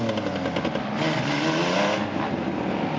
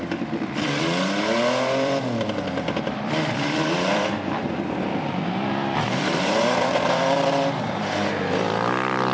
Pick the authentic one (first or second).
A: first